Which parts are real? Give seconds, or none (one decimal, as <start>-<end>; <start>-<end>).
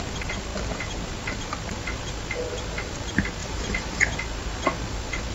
0.0-3.4; 4.0-5.3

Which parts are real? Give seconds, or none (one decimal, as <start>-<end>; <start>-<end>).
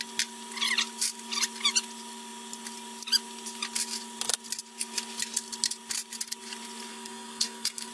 0.0-6.9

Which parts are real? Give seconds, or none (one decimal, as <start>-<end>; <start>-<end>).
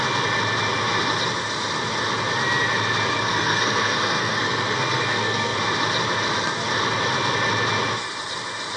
0.0-3.1; 5.6-8.8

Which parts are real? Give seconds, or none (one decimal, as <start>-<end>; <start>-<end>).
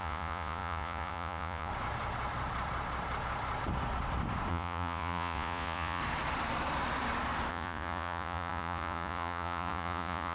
1.7-4.5; 6.0-7.5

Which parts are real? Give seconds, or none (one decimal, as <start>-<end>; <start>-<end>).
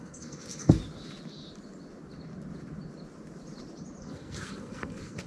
0.8-4.0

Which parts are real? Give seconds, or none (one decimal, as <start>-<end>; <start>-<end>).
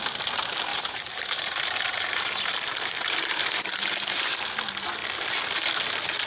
0.0-0.7; 4.5-6.3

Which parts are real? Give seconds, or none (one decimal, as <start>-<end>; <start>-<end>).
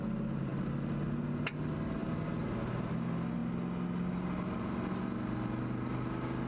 0.0-6.5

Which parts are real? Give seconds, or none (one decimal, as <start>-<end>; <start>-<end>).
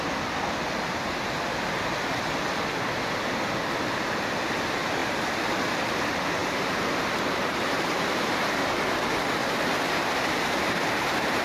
0.0-6.4; 8.6-9.4